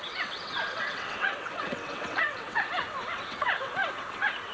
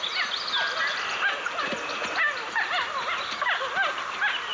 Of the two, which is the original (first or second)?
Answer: second